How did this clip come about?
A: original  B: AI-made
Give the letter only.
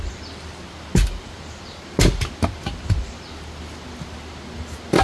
A